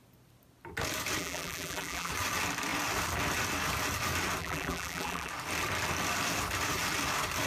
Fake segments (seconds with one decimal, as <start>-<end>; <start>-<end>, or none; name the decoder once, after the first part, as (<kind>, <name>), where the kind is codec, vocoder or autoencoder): 1.2-2.1 (vocoder, BigVGAN v2); 4.4-5.3